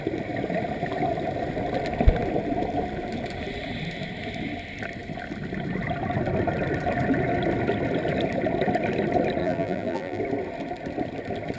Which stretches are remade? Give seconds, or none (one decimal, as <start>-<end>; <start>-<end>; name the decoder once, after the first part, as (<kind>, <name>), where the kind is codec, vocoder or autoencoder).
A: 9.4-10.2 (vocoder, BigVGAN v2)